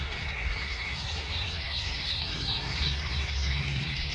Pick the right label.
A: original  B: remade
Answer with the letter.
B